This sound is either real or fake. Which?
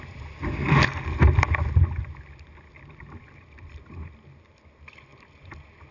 real